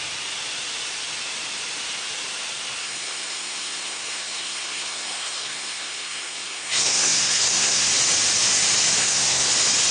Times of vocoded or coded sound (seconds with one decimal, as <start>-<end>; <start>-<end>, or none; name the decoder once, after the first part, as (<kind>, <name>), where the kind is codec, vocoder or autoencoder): 2.8-7.9 (codec, SNAC); 9.0-9.5

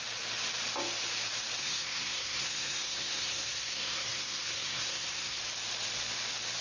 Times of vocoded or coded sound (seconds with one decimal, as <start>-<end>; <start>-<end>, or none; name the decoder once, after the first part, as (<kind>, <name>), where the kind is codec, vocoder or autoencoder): 1.6-5.4 (codec, SNAC)

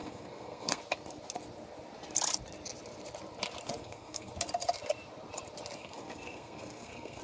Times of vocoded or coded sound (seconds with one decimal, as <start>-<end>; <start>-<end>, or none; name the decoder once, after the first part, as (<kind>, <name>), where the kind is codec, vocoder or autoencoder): 0.0-0.8 (codec, SNAC); 3.8-4.3; 5.8-7.2